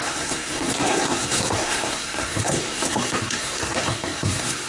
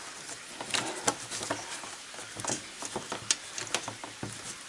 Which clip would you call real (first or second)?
second